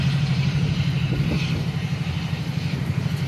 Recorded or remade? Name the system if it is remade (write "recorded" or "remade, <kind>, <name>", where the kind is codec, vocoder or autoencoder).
remade, vocoder, BigVGAN v2